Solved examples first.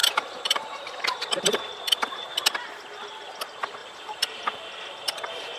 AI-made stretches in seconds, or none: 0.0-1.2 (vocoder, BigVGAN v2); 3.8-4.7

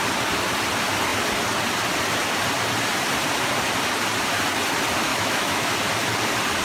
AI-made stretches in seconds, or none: 5.1-5.7 (autoencoder, DAC-VAE)